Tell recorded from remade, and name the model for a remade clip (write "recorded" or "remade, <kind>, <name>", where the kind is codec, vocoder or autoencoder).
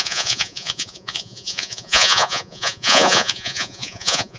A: remade, vocoder, Vocos